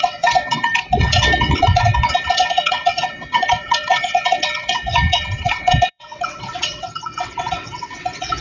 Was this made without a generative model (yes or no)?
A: no